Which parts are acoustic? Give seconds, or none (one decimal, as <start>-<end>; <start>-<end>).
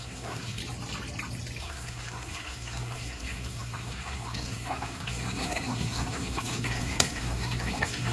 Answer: 0.6-1.6